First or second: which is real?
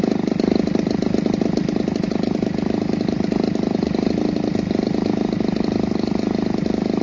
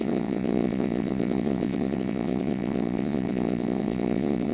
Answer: first